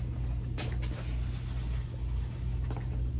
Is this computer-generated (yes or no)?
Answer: no